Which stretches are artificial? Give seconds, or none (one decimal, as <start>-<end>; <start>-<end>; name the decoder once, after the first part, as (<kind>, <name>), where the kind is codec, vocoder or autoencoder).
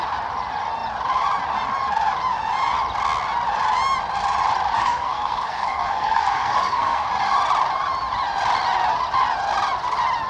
4.8-7.1 (codec, SNAC)